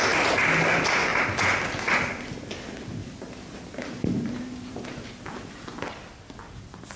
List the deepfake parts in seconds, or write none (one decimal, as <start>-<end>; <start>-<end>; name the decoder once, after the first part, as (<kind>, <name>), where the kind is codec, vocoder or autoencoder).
3.0-5.1 (vocoder, BigVGAN v2)